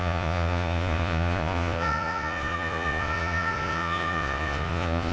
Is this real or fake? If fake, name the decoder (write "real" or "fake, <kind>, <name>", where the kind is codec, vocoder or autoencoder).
fake, vocoder, Vocos